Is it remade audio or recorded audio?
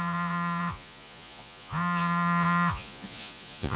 remade